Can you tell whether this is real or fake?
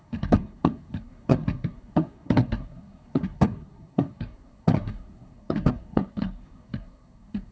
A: fake